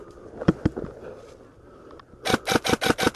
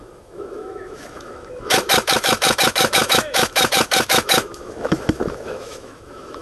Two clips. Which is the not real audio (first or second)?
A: second